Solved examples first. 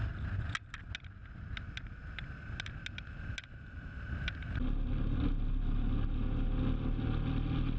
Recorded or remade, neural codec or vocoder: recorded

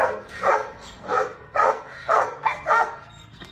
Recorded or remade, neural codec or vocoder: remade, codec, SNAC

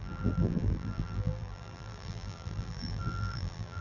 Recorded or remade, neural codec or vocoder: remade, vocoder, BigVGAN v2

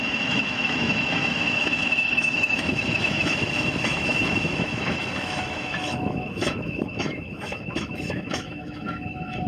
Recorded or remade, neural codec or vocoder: remade, autoencoder, DAC-VAE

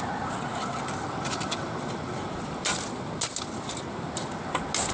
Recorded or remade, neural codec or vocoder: recorded